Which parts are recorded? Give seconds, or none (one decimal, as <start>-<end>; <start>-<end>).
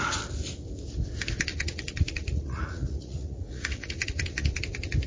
0.0-1.5; 4.6-5.1